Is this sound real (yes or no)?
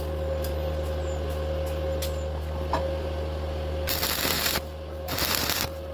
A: yes